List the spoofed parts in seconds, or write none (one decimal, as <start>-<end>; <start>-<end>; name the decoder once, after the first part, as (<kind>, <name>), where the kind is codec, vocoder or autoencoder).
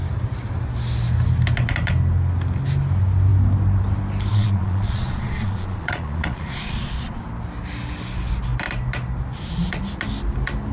4.3-7.2 (vocoder, Vocos)